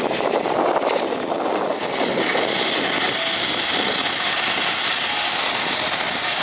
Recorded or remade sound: recorded